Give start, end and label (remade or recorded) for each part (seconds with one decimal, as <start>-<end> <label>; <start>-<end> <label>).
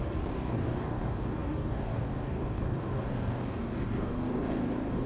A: 0.0-5.1 remade